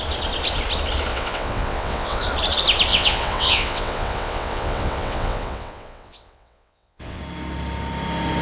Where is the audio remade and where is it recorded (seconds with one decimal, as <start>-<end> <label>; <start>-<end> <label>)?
0.0-1.1 recorded; 1.1-2.2 remade; 2.2-2.9 recorded; 2.9-7.2 remade; 7.2-8.4 recorded